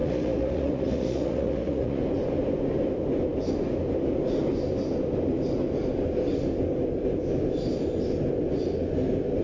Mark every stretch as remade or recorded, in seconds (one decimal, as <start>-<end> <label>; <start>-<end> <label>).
0.0-2.0 remade; 2.0-9.4 recorded